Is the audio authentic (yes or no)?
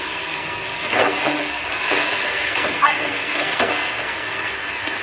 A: no